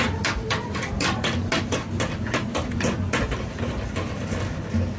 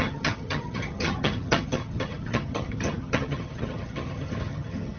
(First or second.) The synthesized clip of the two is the second